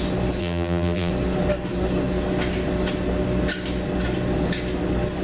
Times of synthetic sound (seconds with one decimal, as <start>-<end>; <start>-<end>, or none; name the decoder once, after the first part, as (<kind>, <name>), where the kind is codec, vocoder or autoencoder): 0.4-1.1 (vocoder, BigVGAN v2)

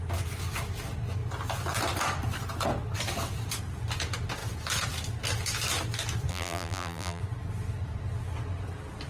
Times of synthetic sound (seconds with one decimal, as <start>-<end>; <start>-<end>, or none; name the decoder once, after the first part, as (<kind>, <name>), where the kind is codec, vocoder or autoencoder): 6.3-7.2 (vocoder, BigVGAN v2)

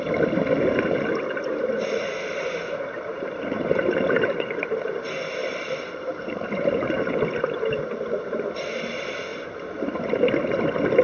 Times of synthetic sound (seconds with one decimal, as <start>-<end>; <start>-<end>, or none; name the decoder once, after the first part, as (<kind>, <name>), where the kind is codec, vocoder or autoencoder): 3.1-4.7 (vocoder, BigVGAN v2); 5.4-7.1; 9.3-10.3

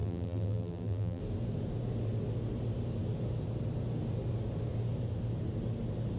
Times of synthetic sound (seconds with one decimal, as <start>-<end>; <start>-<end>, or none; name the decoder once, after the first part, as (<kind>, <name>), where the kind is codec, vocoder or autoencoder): 0.0-1.2 (vocoder, BigVGAN v2)